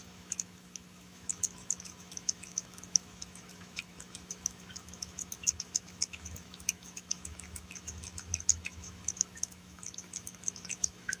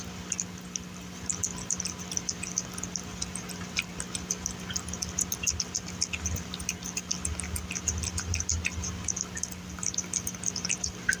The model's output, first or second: first